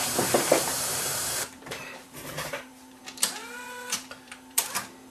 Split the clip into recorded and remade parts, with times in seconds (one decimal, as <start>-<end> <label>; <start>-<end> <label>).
0.0-3.0 remade; 3.0-3.4 recorded; 3.4-4.6 remade; 4.6-5.1 recorded